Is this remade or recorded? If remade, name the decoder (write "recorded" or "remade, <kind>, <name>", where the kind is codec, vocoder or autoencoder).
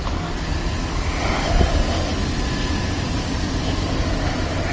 recorded